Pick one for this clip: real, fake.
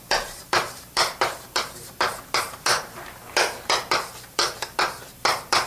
fake